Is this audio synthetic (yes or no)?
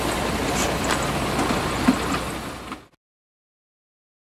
no